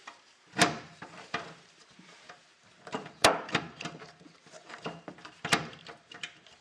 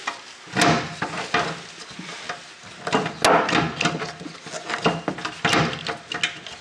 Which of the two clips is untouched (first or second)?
second